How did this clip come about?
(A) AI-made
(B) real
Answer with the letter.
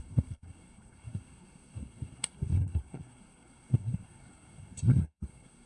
A